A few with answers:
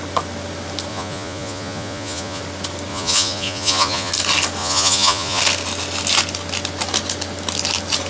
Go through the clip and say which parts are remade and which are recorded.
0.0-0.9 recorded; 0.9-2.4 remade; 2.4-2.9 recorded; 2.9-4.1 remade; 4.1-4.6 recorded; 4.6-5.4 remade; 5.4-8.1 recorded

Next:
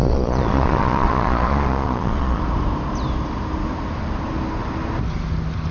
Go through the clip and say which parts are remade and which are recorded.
0.0-2.4 remade; 2.4-5.7 recorded

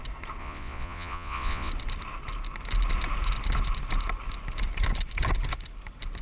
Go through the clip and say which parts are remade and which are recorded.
0.0-0.4 recorded; 0.4-1.7 remade; 1.7-6.2 recorded

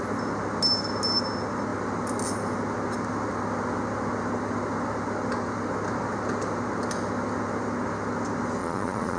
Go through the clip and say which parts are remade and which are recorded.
0.0-8.6 recorded; 8.6-9.2 remade

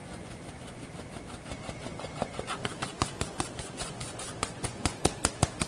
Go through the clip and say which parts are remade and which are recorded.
0.0-0.8 remade; 0.8-1.9 recorded; 1.9-5.3 remade; 5.3-5.7 recorded